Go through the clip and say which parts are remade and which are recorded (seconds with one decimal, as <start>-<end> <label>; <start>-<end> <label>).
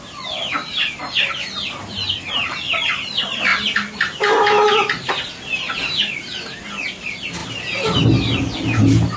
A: 0.0-9.2 recorded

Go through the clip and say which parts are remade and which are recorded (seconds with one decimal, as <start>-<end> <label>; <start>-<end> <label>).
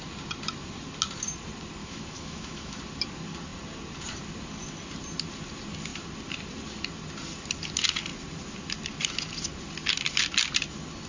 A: 0.0-1.8 recorded; 1.8-2.8 remade; 2.8-11.1 recorded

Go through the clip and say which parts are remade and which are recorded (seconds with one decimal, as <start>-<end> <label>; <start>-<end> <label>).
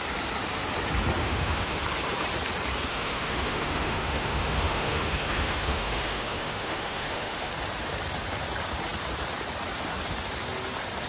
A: 0.0-1.2 recorded; 1.2-1.8 remade; 1.8-2.9 recorded; 2.9-7.5 remade; 7.5-11.1 recorded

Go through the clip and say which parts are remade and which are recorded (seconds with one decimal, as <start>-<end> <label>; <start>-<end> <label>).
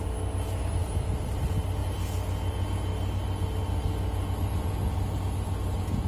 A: 0.0-6.1 recorded